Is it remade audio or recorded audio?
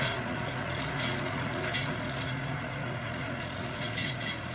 remade